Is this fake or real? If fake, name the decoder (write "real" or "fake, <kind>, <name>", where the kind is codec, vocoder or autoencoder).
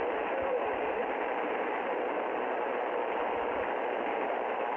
fake, vocoder, BigVGAN v2